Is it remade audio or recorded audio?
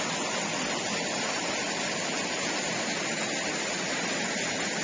recorded